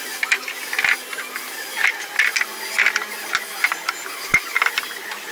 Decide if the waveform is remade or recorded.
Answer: recorded